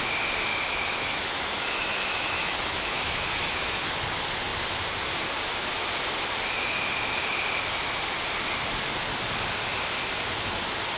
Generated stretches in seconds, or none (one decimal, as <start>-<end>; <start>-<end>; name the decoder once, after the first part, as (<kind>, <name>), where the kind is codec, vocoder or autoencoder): 0.5-3.9 (autoencoder, DAC-VAE)